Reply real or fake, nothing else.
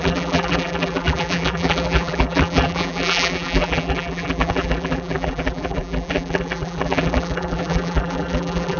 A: fake